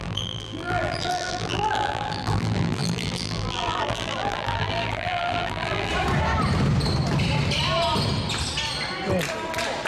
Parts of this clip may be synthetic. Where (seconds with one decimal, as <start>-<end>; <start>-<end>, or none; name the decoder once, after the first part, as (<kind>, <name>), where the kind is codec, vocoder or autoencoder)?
0.0-5.9 (vocoder, BigVGAN v2)